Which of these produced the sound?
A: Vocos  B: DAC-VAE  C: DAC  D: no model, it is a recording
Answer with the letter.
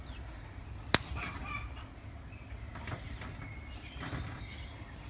D